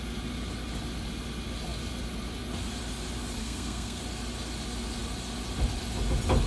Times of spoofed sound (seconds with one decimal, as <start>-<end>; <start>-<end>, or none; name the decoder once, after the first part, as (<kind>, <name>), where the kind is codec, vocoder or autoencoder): 3.4-4.0 (codec, SNAC)

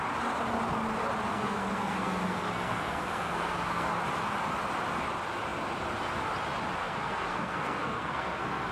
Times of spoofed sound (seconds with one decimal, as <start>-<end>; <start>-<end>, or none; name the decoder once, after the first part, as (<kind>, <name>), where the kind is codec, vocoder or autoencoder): 1.3-4.0 (codec, SNAC); 6.8-8.7